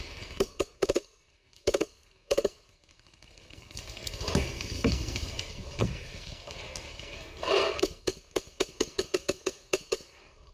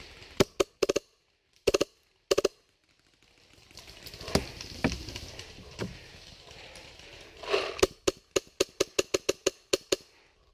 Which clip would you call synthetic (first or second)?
first